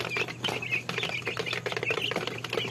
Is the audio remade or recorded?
recorded